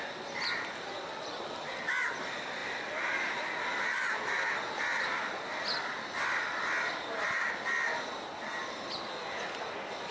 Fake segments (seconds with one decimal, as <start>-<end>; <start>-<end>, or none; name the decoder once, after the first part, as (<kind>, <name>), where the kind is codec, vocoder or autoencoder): none